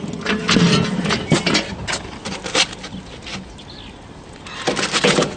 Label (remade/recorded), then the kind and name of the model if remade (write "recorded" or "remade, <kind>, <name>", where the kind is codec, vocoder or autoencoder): recorded